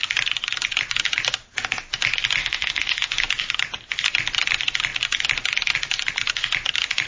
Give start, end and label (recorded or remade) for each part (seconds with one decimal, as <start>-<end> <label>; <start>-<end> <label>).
0.0-2.4 recorded; 2.4-3.2 remade; 3.2-7.1 recorded